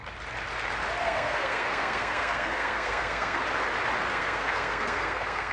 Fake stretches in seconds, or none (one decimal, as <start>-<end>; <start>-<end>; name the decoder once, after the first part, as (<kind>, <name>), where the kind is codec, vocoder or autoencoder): 1.0-3.4 (codec, SNAC); 4.1-5.5